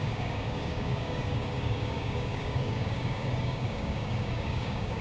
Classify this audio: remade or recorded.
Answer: remade